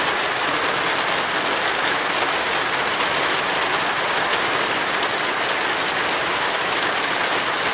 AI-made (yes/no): yes